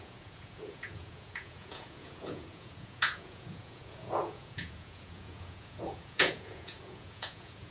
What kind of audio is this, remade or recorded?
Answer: remade